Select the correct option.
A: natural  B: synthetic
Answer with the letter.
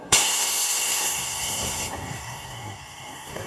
B